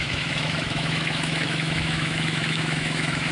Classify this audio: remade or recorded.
remade